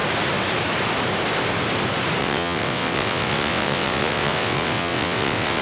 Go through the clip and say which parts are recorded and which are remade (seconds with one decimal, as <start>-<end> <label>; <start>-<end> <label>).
0.0-2.2 recorded; 2.2-5.6 remade